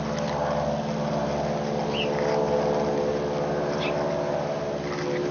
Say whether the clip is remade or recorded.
recorded